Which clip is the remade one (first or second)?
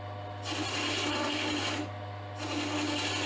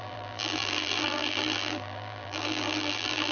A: second